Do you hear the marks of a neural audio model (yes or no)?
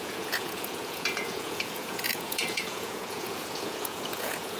yes